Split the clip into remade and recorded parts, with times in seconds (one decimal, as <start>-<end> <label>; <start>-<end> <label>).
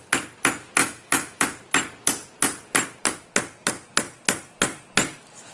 0.0-0.8 recorded; 0.8-1.4 remade; 1.4-5.5 recorded